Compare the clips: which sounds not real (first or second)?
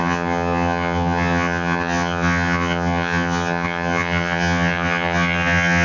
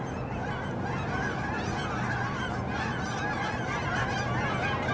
first